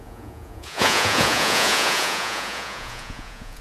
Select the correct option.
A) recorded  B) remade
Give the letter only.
B